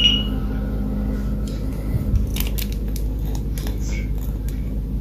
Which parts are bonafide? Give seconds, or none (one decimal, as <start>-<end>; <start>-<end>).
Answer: 0.0-5.0